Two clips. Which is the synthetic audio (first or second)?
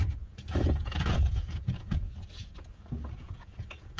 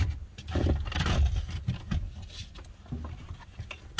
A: first